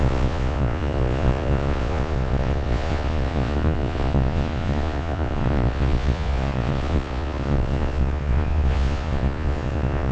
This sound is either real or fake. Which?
fake